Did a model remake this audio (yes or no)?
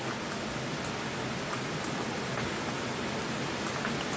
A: no